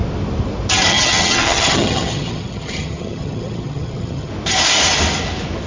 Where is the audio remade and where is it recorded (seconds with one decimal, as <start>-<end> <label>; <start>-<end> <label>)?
0.0-0.9 recorded; 0.9-4.3 remade; 4.3-5.7 recorded